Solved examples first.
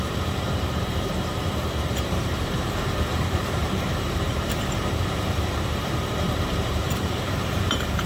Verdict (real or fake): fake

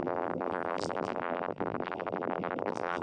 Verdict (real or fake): fake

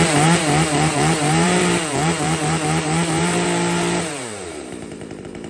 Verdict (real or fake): fake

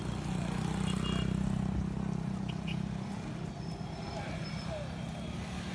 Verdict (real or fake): real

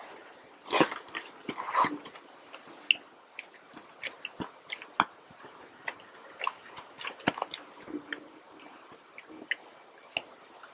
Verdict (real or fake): real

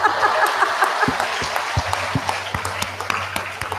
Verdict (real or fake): real